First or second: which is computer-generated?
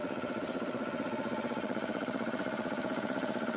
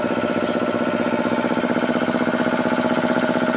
first